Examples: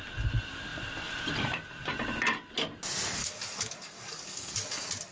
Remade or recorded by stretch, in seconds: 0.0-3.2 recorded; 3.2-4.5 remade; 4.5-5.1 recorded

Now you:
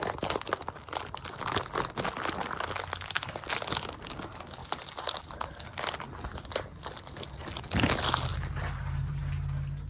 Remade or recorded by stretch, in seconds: 0.0-4.6 recorded; 4.6-5.8 remade; 5.8-8.3 recorded; 8.3-9.2 remade; 9.2-9.9 recorded

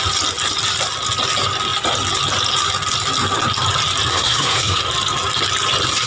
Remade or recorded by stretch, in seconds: 0.0-4.1 recorded; 4.1-4.8 remade; 4.8-6.1 recorded

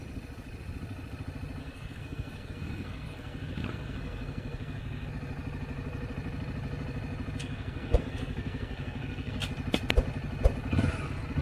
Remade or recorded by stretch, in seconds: 0.0-1.6 recorded; 1.6-5.1 remade; 5.1-7.4 recorded; 7.4-9.5 remade; 9.5-11.4 recorded

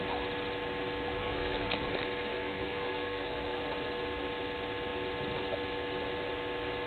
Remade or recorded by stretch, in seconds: 0.0-1.2 recorded; 1.2-1.9 remade; 1.9-2.3 recorded; 2.3-3.6 remade; 3.6-6.9 recorded

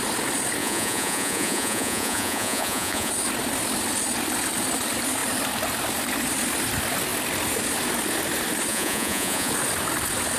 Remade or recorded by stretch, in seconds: 0.0-0.6 recorded; 0.6-3.1 remade; 3.1-8.7 recorded; 8.7-9.5 remade; 9.5-10.4 recorded

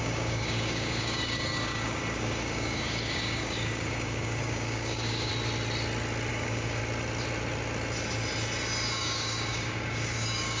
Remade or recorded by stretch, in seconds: 0.0-5.3 remade; 5.3-6.3 recorded; 6.3-6.8 remade; 6.8-8.9 recorded; 8.9-10.6 remade